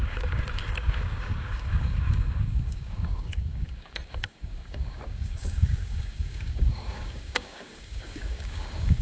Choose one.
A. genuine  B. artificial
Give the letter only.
B